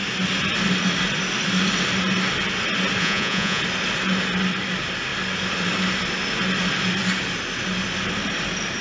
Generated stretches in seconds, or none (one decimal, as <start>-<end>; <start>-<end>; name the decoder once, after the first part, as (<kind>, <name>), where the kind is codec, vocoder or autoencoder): 3.0-3.6 (vocoder, Vocos)